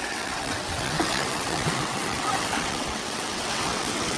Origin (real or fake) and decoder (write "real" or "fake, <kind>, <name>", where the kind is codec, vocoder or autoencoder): fake, vocoder, WaveNeXt